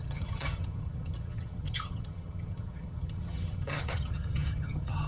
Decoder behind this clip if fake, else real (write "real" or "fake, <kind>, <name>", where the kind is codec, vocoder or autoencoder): fake, vocoder, HiFi-GAN